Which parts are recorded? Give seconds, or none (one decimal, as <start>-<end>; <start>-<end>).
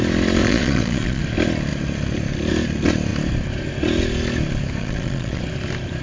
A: 0.0-0.4; 1.2-4.8; 5.4-6.0